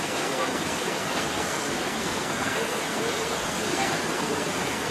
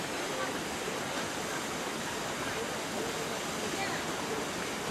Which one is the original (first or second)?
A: second